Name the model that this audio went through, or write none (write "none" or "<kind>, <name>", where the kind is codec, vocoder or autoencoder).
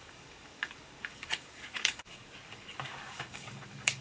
codec, DAC